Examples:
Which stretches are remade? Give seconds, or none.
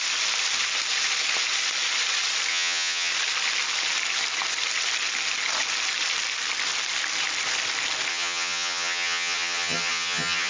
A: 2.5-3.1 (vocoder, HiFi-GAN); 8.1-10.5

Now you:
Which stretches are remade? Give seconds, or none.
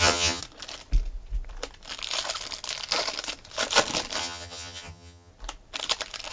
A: 0.0-0.4 (vocoder, HiFi-GAN); 4.2-5.3